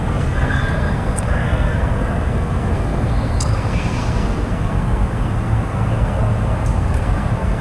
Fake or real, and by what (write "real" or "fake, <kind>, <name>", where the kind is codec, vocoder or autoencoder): fake, codec, SNAC